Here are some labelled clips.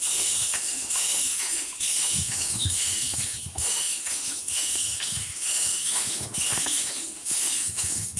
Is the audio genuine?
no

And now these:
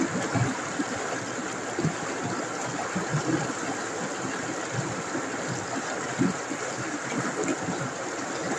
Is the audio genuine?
yes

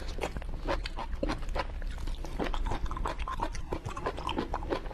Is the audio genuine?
yes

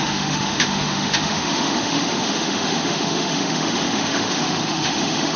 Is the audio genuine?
no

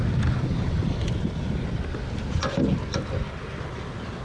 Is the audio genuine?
yes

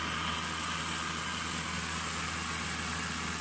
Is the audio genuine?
yes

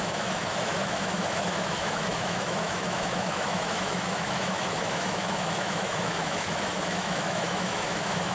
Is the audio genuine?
no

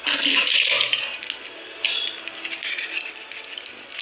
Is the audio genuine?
yes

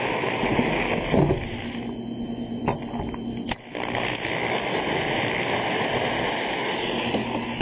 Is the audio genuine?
yes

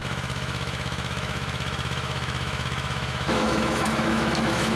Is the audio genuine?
no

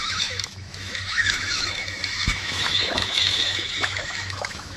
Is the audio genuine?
no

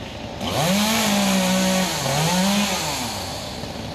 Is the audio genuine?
yes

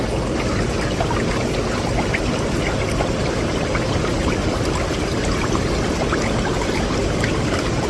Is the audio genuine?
yes